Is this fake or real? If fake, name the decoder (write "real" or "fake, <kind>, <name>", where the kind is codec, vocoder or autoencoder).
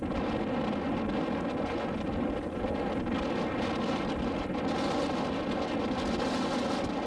real